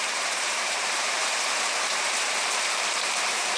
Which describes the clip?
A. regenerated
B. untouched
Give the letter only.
A